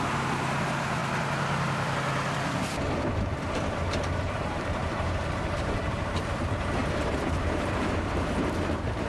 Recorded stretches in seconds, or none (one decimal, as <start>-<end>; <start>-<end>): 1.0-2.6